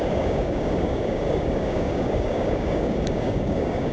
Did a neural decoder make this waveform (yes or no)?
yes